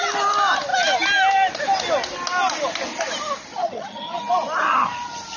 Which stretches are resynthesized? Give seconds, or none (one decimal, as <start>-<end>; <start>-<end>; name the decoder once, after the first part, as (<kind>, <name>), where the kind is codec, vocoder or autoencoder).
3.6-4.2 (vocoder, HiFi-GAN)

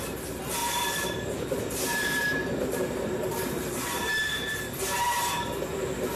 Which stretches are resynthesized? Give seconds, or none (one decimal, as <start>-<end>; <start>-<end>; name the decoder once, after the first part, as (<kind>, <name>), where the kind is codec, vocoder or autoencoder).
0.6-4.3 (vocoder, BigVGAN v2)

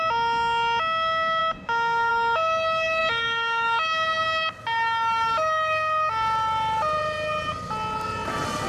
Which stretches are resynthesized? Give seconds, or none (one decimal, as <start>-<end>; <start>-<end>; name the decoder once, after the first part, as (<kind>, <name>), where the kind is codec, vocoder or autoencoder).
none

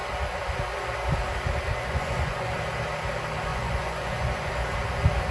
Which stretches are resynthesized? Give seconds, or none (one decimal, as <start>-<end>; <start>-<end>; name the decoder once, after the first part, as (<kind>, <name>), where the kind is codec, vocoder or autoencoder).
1.7-2.5 (vocoder, Vocos); 3.5-4.5

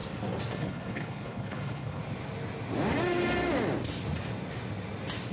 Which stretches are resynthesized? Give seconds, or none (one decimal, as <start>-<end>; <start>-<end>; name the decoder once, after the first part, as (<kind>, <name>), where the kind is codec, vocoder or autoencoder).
0.5-2.0 (codec, HILCodec)

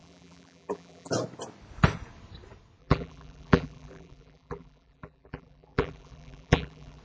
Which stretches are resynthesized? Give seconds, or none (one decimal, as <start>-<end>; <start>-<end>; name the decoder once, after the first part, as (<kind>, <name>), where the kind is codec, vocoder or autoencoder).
0.0-1.1 (vocoder, BigVGAN v2); 2.8-7.0